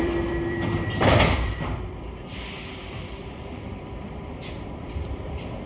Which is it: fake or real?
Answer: fake